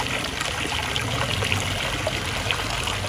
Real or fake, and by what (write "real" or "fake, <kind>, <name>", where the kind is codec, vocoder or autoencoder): real